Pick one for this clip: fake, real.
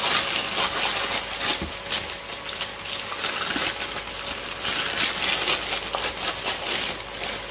real